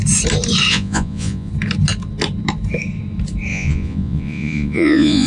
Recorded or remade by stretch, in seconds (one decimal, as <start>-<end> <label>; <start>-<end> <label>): 0.0-0.7 recorded; 0.7-1.5 remade; 1.5-3.5 recorded; 3.5-5.3 remade